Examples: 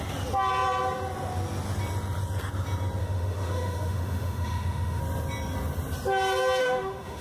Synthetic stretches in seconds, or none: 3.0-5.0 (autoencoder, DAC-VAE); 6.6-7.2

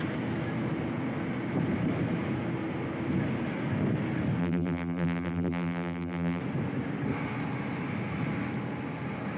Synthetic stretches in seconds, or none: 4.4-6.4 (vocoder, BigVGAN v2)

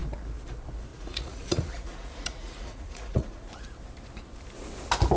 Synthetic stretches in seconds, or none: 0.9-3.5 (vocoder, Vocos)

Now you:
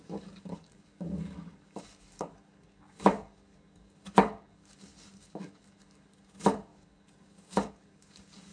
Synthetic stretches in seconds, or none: 0.0-8.5 (codec, DAC)